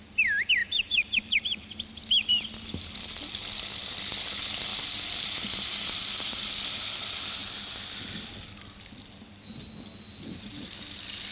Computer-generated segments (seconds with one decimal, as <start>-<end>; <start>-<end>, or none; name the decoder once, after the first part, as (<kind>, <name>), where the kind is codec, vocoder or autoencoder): 0.6-2.0 (vocoder, BigVGAN v2); 4.7-6.4